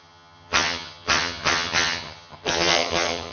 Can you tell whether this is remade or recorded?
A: remade